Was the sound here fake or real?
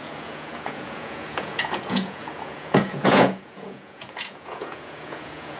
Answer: fake